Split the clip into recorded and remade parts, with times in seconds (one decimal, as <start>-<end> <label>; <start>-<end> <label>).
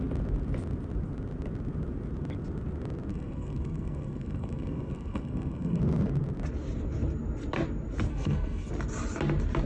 0.0-3.1 recorded; 3.1-5.8 remade; 5.8-8.1 recorded; 8.1-8.7 remade; 8.7-9.7 recorded